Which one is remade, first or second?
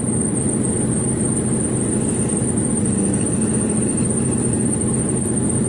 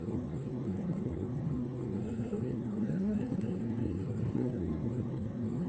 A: second